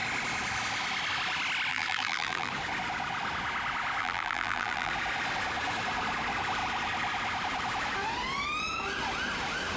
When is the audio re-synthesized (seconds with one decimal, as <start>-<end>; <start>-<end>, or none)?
1.7-2.5; 4.0-4.9